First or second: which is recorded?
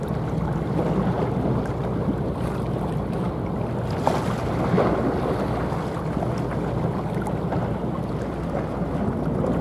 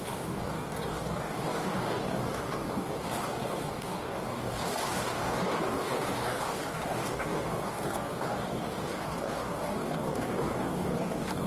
first